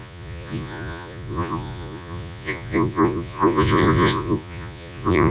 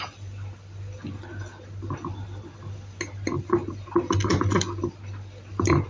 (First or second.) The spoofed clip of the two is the first